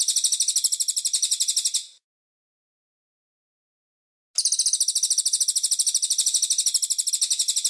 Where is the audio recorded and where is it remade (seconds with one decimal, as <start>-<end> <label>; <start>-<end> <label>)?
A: 0.0-7.7 recorded